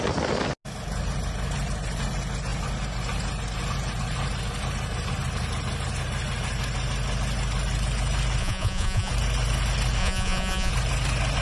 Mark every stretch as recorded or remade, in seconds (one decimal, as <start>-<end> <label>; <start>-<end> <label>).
0.0-8.4 recorded; 8.4-9.1 remade; 9.1-10.0 recorded; 10.0-10.7 remade; 10.7-11.4 recorded